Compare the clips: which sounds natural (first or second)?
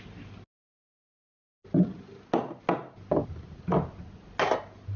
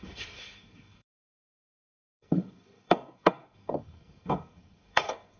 first